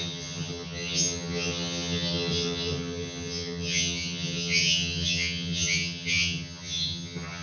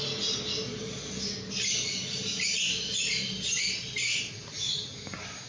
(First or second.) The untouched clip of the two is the second